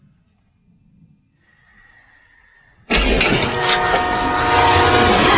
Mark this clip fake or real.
real